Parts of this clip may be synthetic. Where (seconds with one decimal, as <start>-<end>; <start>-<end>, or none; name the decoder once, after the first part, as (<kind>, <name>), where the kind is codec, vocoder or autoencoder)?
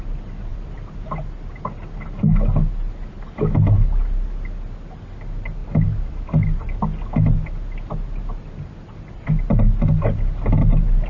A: 0.5-1.2 (vocoder, BigVGAN v2)